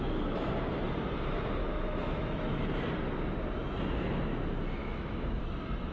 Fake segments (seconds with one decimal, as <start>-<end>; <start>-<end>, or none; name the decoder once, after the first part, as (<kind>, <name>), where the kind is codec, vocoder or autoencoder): 1.6-2.6 (autoencoder, DAC-VAE); 4.8-5.4